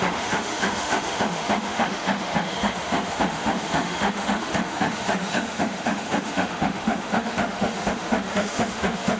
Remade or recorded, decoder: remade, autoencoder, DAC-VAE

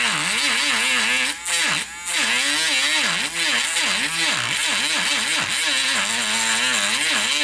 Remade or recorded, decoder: recorded